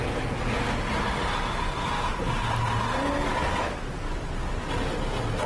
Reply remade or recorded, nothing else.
recorded